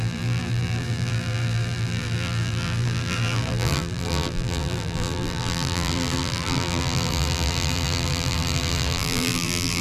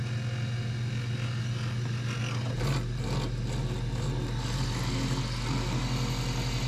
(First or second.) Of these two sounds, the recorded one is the second